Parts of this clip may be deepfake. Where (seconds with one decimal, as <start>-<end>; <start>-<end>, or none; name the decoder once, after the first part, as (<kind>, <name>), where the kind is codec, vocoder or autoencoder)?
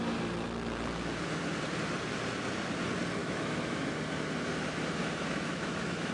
3.2-4.0 (autoencoder, DAC-VAE); 5.0-6.1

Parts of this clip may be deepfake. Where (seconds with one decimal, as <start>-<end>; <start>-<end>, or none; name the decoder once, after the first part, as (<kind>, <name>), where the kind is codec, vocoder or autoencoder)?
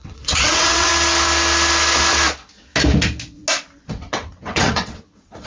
0.0-0.9 (vocoder, WaveNeXt); 3.9-5.5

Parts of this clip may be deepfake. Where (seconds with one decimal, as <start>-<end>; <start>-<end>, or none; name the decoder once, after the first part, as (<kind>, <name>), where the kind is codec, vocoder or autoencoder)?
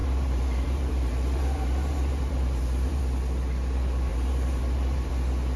0.0-3.0 (vocoder, BigVGAN v2); 4.1-5.1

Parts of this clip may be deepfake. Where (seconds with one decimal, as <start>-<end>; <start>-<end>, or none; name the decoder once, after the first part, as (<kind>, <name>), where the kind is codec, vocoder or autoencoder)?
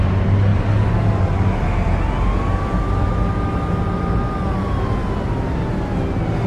none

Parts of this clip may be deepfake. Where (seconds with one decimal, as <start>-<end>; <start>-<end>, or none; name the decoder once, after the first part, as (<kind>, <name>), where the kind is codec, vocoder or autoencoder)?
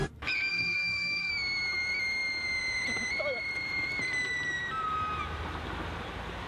0.5-1.3 (codec, DAC)